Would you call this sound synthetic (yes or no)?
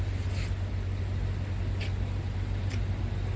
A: no